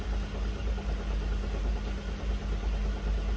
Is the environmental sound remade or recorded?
recorded